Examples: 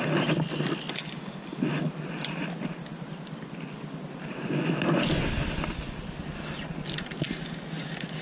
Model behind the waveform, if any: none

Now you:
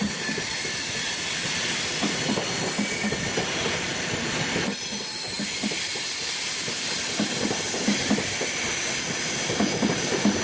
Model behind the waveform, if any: none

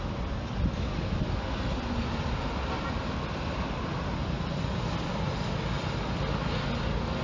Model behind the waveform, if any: none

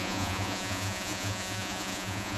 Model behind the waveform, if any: vocoder, Vocos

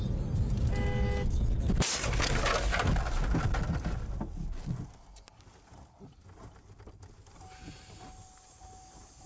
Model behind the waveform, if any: none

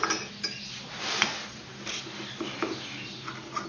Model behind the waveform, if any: none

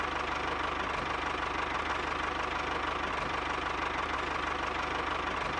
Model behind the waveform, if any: none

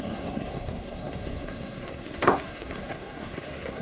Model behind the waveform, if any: codec, SNAC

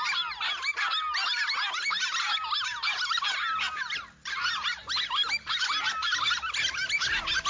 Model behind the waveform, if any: none